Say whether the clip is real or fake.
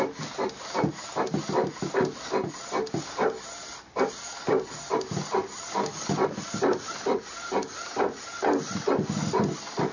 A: real